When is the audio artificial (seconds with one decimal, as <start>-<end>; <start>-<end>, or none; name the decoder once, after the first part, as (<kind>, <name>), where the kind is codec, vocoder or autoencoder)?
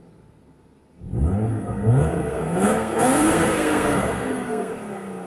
1.5-4.7 (codec, SNAC)